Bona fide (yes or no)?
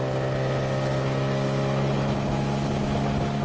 yes